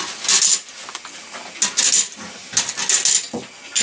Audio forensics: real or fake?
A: real